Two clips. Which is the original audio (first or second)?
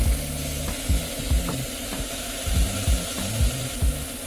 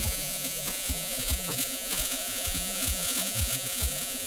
first